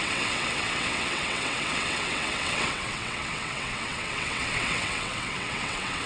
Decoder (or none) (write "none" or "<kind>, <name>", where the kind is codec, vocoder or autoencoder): vocoder, WaveNeXt